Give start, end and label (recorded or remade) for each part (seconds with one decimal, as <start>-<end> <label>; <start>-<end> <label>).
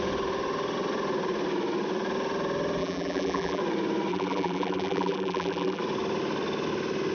0.0-2.8 recorded; 2.8-3.6 remade; 3.6-4.1 recorded; 4.1-5.8 remade; 5.8-7.1 recorded